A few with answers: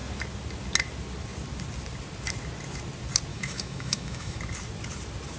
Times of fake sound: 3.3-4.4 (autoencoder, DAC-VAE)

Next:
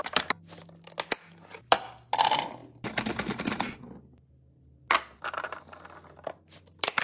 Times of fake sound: none